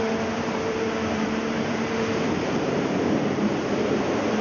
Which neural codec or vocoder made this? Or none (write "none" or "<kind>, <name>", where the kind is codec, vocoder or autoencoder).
vocoder, BigVGAN v2